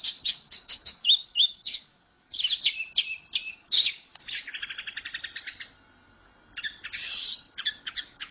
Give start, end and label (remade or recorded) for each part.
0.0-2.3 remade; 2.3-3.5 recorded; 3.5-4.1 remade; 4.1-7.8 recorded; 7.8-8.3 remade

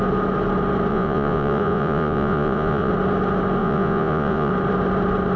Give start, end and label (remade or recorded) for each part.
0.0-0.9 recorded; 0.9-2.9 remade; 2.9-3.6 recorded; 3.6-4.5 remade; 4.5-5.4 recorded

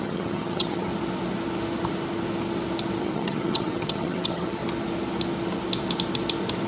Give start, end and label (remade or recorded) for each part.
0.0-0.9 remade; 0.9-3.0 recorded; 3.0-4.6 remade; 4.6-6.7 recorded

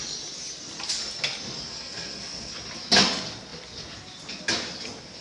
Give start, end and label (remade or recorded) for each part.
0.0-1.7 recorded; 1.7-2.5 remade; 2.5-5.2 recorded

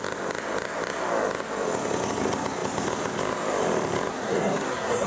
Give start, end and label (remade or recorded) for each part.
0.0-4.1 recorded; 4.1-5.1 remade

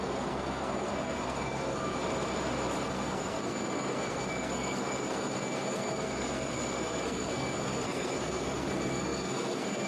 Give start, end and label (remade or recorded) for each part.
0.0-2.0 remade; 2.0-2.8 recorded; 2.8-9.9 remade

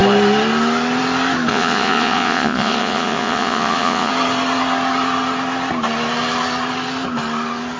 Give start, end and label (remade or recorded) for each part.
0.0-1.5 recorded; 1.5-4.1 remade; 4.1-7.8 recorded